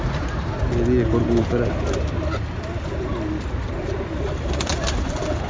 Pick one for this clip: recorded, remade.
recorded